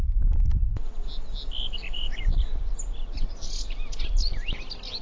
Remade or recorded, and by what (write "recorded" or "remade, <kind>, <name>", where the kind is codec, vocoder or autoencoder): recorded